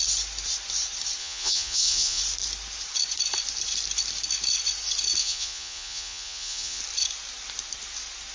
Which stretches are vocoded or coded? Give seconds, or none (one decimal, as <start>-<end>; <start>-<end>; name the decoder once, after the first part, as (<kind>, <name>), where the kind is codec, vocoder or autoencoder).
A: 1.2-2.2 (vocoder, Vocos); 5.2-6.8